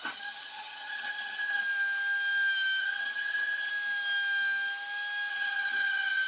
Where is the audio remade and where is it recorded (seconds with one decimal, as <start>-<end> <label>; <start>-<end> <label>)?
0.0-1.6 remade; 1.6-2.8 recorded; 2.8-3.7 remade; 3.7-5.3 recorded; 5.3-6.3 remade